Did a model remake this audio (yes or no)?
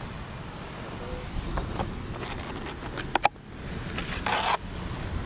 no